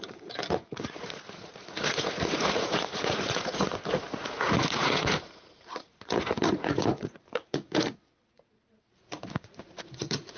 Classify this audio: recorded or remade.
remade